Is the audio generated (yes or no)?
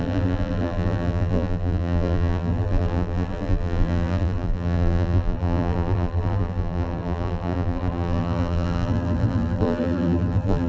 yes